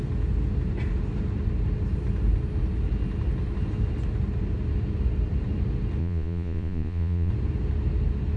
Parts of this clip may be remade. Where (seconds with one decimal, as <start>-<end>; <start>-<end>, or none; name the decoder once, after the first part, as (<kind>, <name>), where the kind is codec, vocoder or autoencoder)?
6.0-7.3 (vocoder, Vocos)